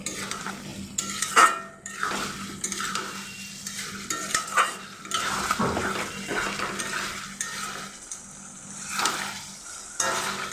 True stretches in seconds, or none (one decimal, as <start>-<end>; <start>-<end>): 0.0-10.5